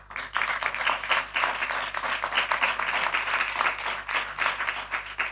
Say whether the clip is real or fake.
real